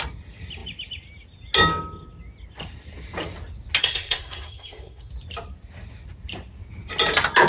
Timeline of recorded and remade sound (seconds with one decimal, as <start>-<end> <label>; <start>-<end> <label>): 0.0-3.8 recorded; 3.8-5.1 remade; 5.1-7.5 recorded